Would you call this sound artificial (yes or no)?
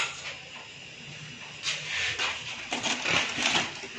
no